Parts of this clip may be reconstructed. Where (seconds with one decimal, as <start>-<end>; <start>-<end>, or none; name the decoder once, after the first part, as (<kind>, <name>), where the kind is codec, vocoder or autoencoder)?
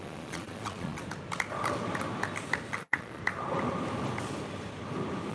0.0-1.0 (vocoder, Vocos); 2.7-3.2